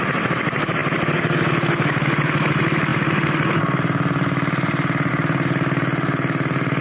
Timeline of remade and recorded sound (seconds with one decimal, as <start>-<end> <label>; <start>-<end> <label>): 0.0-6.8 recorded